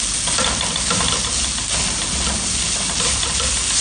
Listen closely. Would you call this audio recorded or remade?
recorded